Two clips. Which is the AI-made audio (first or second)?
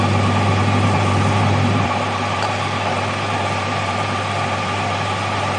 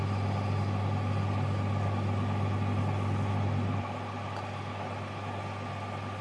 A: first